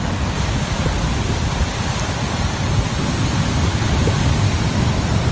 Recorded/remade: recorded